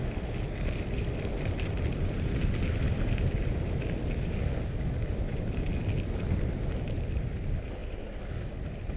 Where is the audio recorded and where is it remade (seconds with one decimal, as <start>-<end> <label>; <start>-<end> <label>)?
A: 0.0-9.0 recorded